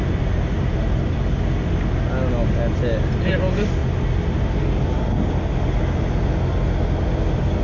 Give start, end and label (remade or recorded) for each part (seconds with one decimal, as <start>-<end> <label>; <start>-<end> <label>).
0.0-7.6 recorded